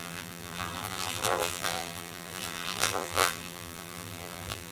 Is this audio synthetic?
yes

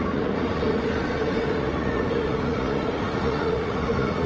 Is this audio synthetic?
yes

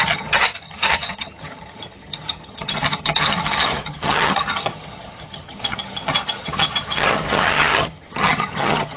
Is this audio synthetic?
yes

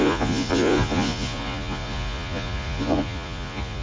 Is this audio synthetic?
yes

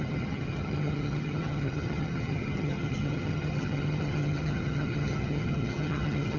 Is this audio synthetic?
yes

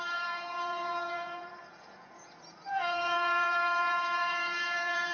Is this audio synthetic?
yes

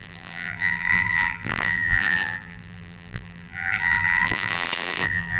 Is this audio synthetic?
yes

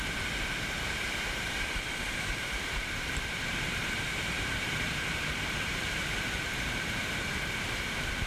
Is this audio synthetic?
yes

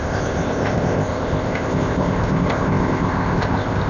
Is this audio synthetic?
yes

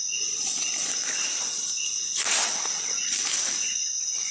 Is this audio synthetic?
no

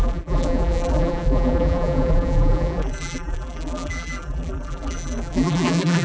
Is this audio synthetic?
yes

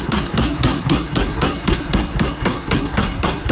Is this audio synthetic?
yes